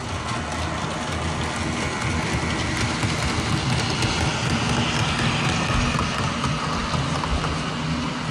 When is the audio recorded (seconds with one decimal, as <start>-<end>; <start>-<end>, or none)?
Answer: 0.0-8.3